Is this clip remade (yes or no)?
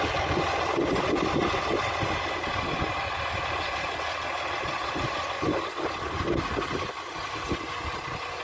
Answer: no